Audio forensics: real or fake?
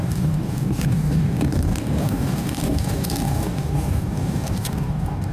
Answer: fake